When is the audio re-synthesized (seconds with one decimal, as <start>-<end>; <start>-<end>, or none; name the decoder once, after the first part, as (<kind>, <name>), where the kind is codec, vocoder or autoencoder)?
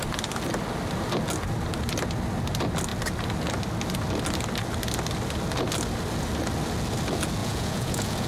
7.4-8.3 (vocoder, Vocos)